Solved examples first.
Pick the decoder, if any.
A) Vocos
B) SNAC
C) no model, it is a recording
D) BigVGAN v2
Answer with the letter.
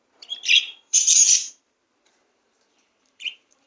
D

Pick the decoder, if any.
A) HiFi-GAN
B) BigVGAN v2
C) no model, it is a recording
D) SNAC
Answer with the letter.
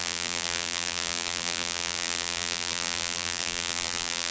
B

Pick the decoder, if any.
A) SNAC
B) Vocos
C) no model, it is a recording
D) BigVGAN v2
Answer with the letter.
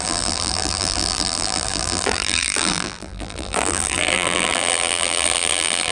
D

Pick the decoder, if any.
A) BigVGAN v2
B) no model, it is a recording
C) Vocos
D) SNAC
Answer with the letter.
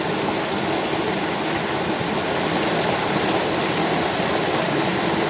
B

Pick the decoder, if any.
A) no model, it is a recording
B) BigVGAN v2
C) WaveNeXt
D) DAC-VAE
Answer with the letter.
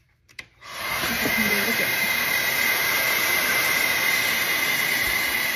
B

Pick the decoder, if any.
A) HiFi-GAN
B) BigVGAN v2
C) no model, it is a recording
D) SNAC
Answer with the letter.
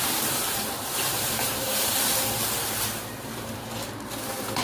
B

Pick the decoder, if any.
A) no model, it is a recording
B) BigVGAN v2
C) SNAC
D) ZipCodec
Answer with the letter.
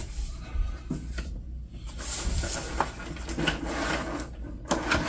A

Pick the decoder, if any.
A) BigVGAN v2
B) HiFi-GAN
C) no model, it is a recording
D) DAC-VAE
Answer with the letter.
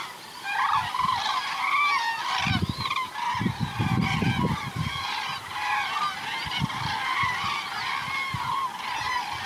A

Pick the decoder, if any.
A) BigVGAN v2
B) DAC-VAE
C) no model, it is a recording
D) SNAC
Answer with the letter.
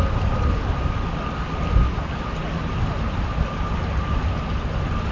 C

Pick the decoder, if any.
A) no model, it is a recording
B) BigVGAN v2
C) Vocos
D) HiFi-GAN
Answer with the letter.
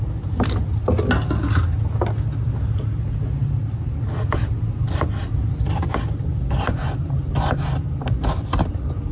A